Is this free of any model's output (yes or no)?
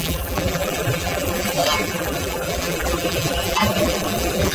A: no